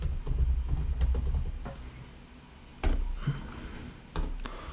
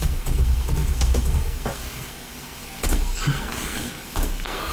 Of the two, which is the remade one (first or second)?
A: second